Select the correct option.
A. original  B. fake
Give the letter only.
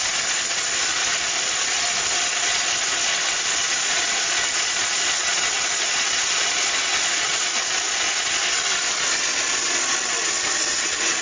A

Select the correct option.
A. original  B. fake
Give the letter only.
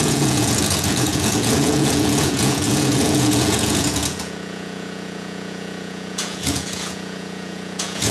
B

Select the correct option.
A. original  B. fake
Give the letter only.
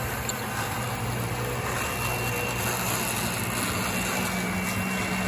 A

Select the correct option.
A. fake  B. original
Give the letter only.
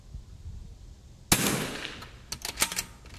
B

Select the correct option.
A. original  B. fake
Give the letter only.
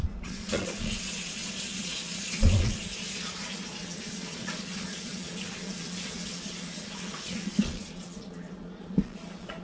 B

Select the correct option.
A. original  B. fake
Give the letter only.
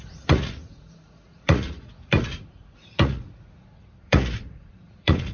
B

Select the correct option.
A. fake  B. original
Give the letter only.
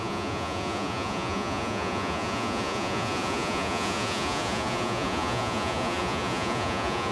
A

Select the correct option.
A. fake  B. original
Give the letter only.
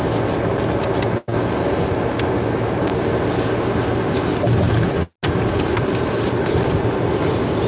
B